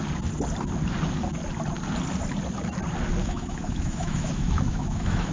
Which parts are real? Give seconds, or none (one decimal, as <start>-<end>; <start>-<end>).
0.0-3.2